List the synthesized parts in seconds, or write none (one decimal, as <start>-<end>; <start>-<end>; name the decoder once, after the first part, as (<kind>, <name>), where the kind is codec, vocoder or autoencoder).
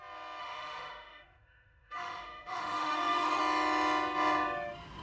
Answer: 0.4-3.4 (autoencoder, DAC-VAE)